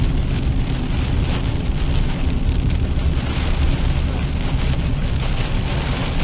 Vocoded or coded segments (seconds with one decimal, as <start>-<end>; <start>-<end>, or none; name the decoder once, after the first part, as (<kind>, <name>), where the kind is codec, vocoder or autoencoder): none

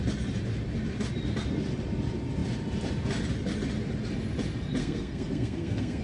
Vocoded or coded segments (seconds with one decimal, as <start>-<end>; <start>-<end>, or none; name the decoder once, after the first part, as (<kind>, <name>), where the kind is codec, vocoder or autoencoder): 4.8-6.0 (codec, SNAC)